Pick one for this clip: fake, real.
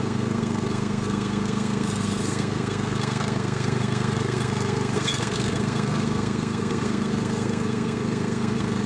fake